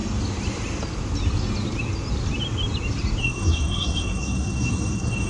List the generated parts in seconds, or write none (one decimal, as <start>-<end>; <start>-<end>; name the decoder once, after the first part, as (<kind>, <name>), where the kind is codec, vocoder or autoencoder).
3.2-5.3 (codec, SNAC)